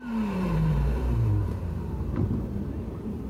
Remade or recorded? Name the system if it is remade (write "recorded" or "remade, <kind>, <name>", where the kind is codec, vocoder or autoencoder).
remade, vocoder, BigVGAN v2